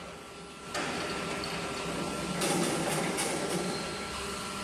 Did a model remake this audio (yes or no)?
no